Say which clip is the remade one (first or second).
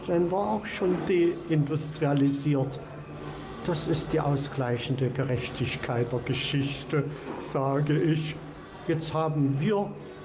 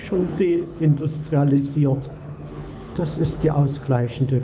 second